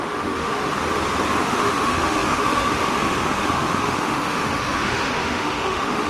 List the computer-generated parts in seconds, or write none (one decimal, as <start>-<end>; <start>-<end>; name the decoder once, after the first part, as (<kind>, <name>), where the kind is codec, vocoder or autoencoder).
0.0-0.6 (autoencoder, DAC-VAE); 1.4-6.1